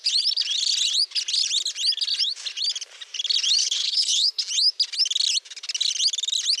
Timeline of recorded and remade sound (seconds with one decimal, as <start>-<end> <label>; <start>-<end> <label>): 0.0-3.6 recorded; 3.6-4.4 remade; 4.4-6.6 recorded